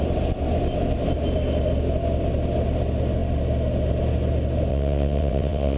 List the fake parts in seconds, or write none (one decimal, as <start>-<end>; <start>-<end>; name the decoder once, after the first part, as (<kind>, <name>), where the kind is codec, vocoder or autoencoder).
4.7-5.8 (vocoder, WaveNeXt)